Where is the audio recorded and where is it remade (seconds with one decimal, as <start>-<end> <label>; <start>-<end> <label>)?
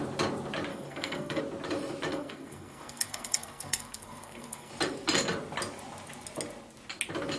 0.0-0.7 recorded; 0.7-1.4 remade; 1.4-2.1 recorded; 2.1-4.7 remade; 4.7-7.4 recorded